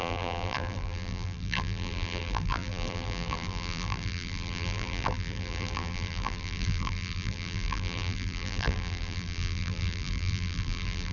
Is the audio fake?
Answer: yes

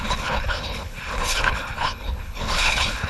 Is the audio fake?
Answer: yes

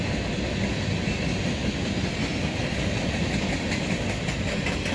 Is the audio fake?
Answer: no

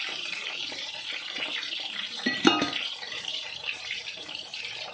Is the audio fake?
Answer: yes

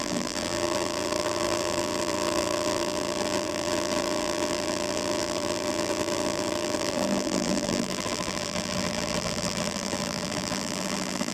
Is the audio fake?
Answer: yes